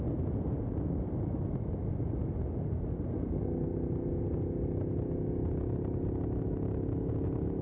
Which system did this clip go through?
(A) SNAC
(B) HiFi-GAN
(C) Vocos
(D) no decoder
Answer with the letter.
D